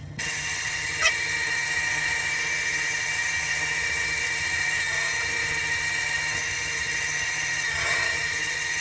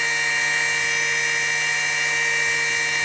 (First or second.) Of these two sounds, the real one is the second